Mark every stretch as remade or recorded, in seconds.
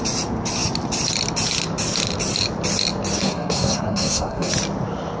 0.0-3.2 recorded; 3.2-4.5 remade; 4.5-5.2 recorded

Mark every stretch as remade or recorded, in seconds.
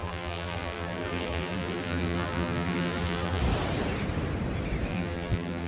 0.0-3.4 remade; 3.4-4.9 recorded; 4.9-5.7 remade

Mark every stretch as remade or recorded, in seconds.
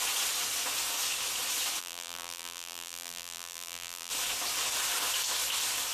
0.0-1.8 recorded; 1.8-4.1 remade; 4.1-5.9 recorded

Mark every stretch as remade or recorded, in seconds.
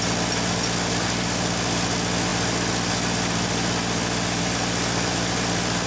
0.0-5.9 recorded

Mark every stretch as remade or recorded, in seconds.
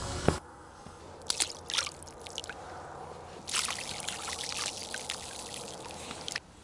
0.0-1.0 remade; 1.0-6.6 recorded